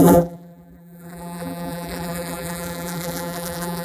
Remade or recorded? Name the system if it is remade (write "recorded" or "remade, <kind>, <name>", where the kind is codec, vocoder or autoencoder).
remade, vocoder, BigVGAN v2